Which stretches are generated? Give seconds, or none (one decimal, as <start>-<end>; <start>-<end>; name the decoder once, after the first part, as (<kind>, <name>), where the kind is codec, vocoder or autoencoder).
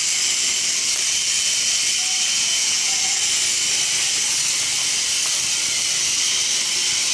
2.3-2.9 (vocoder, Vocos)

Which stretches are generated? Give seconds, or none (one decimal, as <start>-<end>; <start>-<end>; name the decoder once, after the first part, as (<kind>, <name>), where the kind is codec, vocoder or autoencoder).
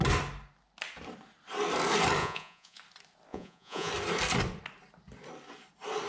2.2-2.8 (vocoder, Vocos); 3.3-3.9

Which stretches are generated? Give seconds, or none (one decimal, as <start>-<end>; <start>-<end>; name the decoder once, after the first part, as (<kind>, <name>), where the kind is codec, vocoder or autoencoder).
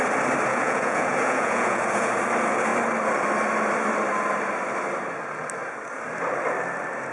0.5-2.1 (vocoder, Vocos)